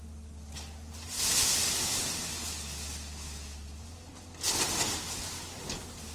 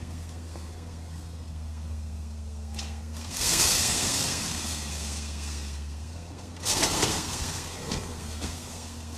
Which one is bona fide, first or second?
first